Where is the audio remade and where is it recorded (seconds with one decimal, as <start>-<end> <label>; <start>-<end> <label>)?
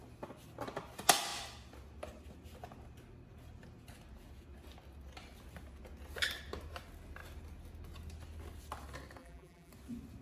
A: 0.0-9.2 recorded; 9.2-9.7 remade; 9.7-10.2 recorded